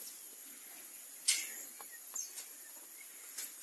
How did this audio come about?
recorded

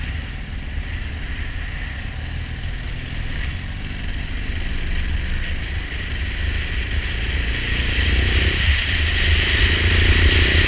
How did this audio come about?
recorded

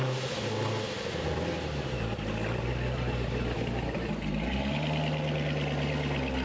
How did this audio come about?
recorded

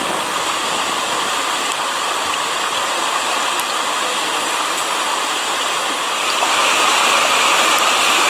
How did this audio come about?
recorded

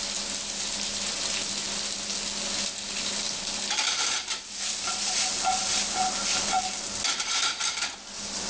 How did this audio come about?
recorded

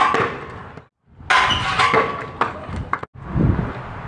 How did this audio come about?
recorded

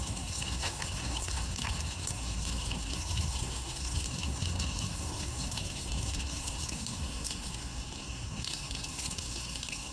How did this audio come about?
remade